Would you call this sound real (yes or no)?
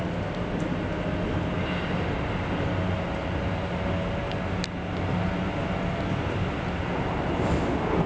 yes